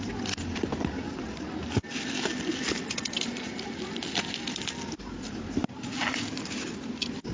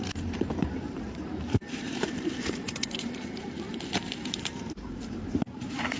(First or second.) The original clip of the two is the first